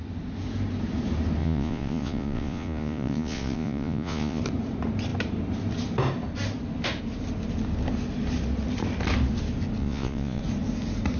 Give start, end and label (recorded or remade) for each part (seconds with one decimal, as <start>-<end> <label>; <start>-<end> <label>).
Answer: 0.0-1.4 recorded; 1.4-4.4 remade; 4.4-9.8 recorded; 9.8-10.4 remade; 10.4-11.2 recorded